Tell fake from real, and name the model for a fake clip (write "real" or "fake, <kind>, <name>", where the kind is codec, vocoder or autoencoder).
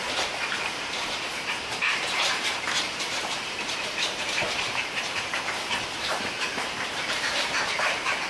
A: fake, vocoder, BigVGAN v2